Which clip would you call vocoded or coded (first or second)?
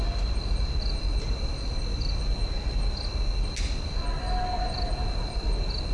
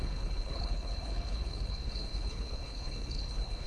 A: second